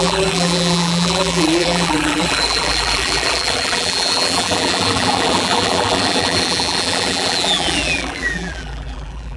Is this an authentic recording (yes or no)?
no